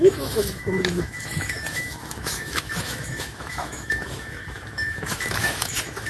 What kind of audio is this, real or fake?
fake